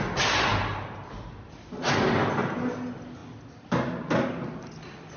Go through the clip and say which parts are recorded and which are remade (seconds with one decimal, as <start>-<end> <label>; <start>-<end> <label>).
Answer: 0.0-5.2 recorded